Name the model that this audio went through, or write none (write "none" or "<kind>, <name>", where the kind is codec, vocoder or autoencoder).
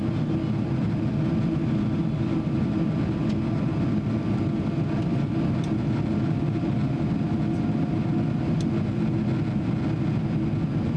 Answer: none